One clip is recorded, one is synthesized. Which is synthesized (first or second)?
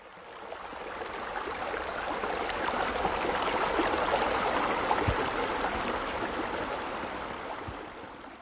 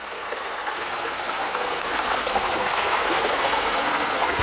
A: second